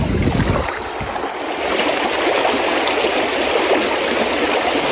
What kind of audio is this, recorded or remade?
recorded